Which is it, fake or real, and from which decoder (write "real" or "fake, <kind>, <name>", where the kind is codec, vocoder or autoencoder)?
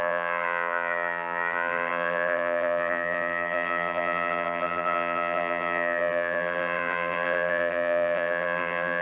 fake, vocoder, BigVGAN v2